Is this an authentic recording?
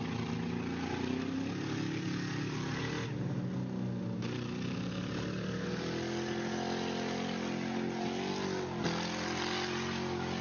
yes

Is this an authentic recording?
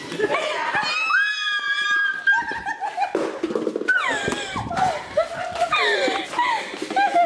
yes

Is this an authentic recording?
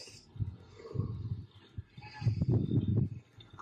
yes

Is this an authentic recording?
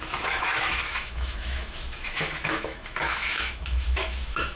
no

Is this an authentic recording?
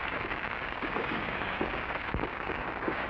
no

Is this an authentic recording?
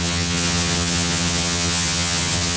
no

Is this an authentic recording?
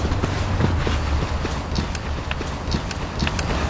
yes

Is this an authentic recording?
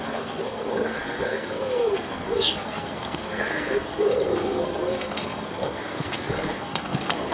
no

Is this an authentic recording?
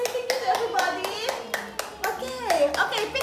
yes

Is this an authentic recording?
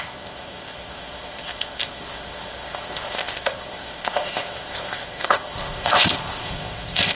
no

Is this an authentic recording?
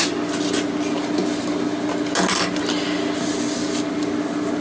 yes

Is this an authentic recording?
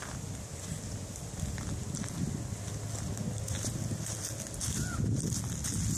yes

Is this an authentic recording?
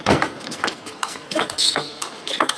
no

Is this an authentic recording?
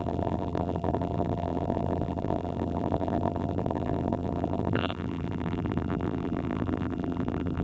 no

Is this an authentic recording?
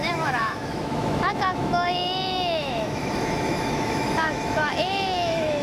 no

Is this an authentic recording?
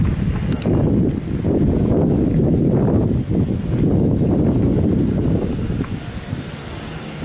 yes